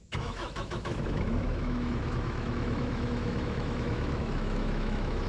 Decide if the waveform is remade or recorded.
remade